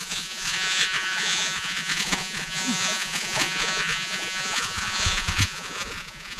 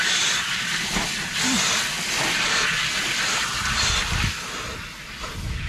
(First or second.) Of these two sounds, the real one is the second